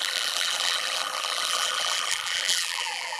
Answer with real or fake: fake